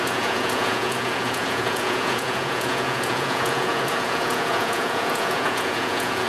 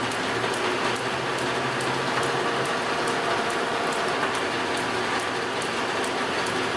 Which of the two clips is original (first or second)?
second